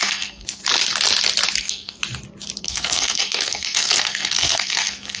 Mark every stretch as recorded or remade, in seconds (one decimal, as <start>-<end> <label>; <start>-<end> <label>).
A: 0.0-0.6 remade; 0.6-1.6 recorded; 1.6-2.0 remade; 2.0-2.6 recorded; 2.6-5.2 remade